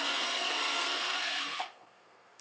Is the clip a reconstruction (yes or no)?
yes